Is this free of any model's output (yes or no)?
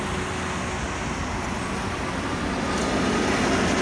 yes